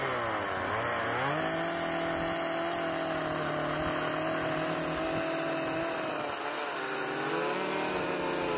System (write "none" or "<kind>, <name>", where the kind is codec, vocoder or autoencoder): none